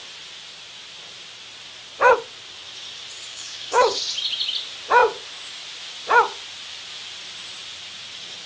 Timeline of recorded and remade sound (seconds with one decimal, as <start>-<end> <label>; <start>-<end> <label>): 0.0-3.3 recorded; 3.3-4.0 remade; 4.0-8.5 recorded